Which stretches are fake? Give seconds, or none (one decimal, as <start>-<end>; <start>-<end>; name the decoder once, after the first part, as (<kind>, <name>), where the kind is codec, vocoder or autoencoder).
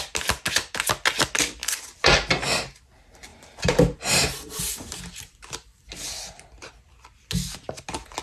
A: 3.3-4.6 (vocoder, BigVGAN v2)